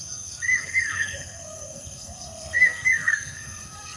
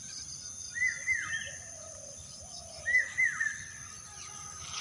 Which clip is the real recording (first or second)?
second